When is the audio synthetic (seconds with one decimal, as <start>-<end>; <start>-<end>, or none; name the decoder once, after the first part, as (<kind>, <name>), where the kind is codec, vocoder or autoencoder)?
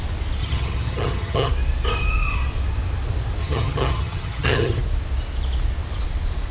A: 0.4-1.5 (vocoder, HiFi-GAN); 3.4-4.8